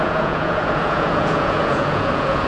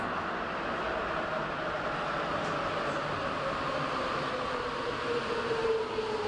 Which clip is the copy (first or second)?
first